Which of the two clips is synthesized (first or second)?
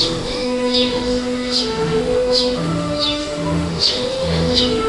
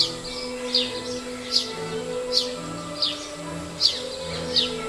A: first